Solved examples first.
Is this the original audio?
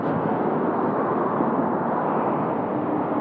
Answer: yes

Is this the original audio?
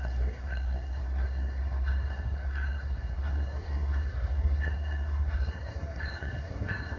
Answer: no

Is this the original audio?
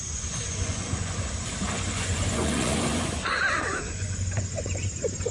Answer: no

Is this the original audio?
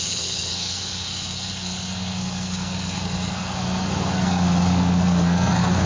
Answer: no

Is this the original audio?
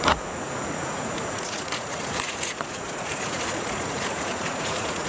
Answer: no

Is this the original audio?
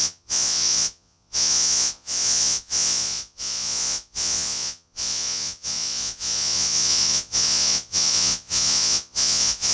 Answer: no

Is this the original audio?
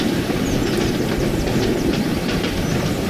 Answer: yes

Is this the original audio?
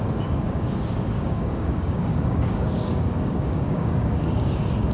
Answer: no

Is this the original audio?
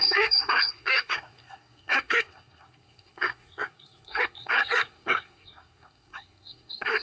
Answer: no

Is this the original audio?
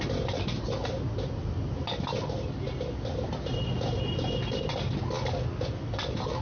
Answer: yes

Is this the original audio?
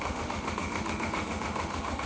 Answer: no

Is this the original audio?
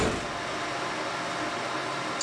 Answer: yes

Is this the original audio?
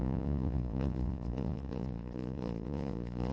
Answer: no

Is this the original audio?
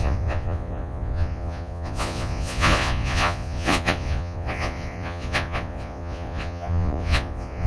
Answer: no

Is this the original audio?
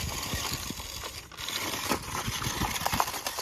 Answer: yes